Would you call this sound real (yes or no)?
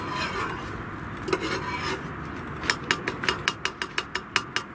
yes